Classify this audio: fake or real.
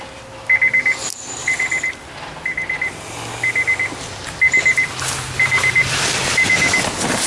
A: real